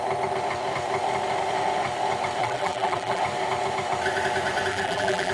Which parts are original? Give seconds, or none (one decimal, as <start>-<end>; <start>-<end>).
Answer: 0.0-2.4; 3.2-4.7